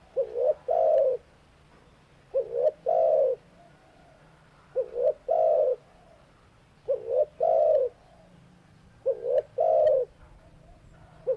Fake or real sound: real